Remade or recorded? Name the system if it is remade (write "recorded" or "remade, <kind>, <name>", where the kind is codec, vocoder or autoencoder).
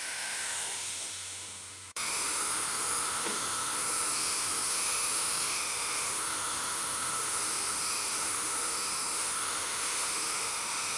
remade, autoencoder, DAC-VAE